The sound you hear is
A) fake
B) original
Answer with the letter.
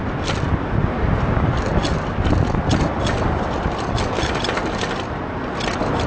B